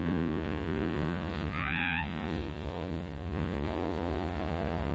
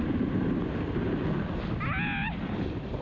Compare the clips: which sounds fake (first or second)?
first